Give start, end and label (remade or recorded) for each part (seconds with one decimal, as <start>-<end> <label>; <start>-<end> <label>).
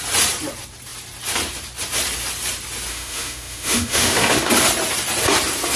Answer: 0.0-2.9 recorded; 2.9-4.5 remade; 4.5-5.8 recorded